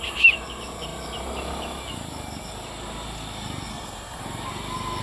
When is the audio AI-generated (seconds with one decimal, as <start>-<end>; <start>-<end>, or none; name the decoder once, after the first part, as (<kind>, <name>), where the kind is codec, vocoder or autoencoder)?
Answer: 3.7-4.2 (codec, SNAC)